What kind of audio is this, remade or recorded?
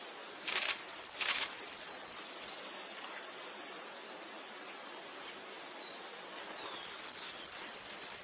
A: recorded